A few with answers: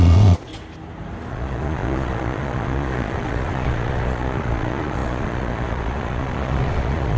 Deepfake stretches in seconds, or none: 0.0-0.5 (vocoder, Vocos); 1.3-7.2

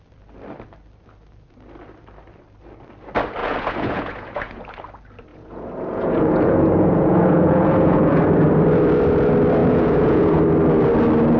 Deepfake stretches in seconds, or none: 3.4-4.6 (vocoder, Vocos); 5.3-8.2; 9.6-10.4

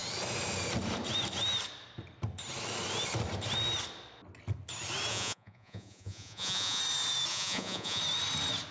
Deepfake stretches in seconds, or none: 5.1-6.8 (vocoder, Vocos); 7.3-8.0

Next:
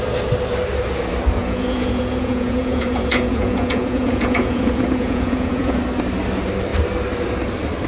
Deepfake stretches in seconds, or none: 1.4-5.8 (vocoder, Vocos)